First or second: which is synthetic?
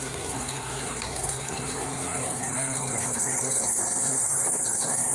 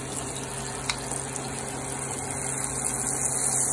first